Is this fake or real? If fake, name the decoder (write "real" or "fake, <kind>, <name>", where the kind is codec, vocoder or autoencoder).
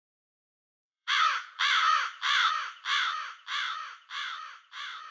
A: fake, vocoder, BigVGAN v2